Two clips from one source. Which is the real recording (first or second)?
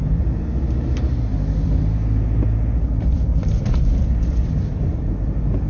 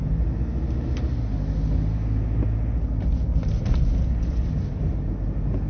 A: second